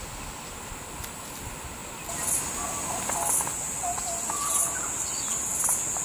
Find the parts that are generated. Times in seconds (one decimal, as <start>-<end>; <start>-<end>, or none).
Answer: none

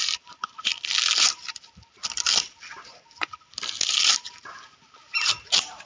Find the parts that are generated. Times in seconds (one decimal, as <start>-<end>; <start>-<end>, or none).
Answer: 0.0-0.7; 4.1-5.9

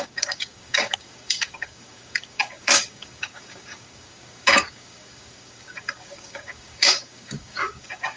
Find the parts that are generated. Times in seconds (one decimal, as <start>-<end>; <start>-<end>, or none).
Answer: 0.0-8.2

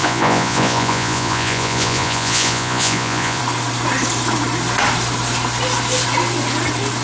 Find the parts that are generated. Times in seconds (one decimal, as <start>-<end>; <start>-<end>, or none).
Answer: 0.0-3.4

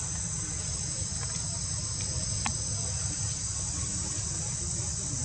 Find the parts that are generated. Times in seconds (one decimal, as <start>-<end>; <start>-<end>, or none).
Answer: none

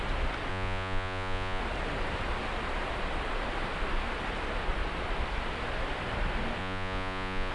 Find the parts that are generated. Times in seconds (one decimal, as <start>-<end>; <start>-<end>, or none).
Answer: 0.5-1.6; 6.6-7.5